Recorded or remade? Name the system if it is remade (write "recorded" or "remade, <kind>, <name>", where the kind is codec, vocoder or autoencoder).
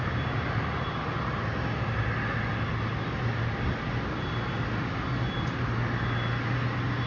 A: recorded